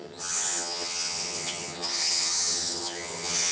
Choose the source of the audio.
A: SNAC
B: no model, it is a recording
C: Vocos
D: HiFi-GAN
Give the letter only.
D